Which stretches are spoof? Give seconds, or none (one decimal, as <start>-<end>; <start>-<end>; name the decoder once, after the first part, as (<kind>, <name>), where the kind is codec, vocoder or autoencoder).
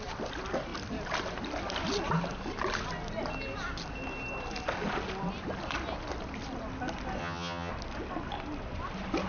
7.2-7.7 (vocoder, HiFi-GAN)